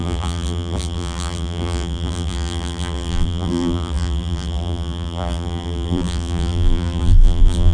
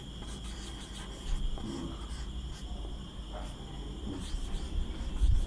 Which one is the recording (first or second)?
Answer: second